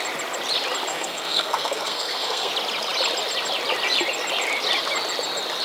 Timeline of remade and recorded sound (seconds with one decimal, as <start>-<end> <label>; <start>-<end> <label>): 0.0-0.9 recorded; 0.9-2.5 remade; 2.5-5.6 recorded